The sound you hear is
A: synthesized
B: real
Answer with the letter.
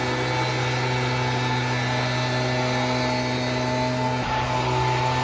B